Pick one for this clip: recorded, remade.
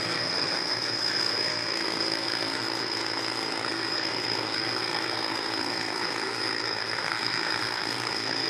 remade